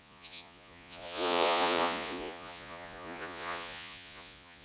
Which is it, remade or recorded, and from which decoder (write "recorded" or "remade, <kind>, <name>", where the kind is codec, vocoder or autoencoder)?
remade, vocoder, Vocos